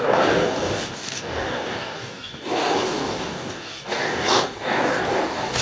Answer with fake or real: fake